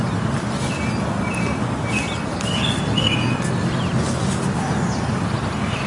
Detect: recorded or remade recorded